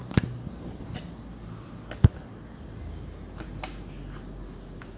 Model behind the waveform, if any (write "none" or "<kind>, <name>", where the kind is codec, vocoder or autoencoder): none